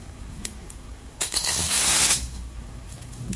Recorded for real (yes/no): no